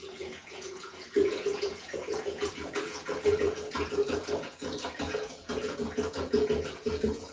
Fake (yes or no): yes